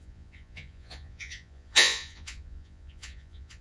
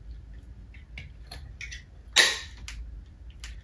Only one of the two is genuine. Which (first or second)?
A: second